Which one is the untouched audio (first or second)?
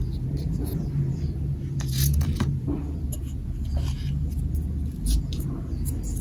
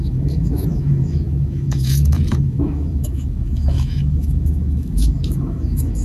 first